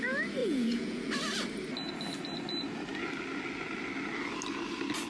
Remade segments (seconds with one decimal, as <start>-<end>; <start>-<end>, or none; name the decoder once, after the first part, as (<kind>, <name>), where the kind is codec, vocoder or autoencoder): 0.4-1.1 (vocoder, Vocos)